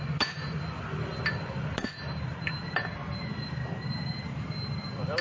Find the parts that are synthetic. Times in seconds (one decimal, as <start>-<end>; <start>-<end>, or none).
none